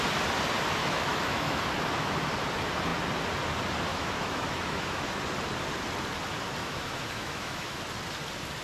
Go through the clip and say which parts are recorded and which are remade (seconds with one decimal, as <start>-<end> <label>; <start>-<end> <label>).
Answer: 0.0-0.8 recorded; 0.8-1.6 remade; 1.6-3.9 recorded; 3.9-5.1 remade; 5.1-6.6 recorded; 6.6-7.8 remade; 7.8-8.6 recorded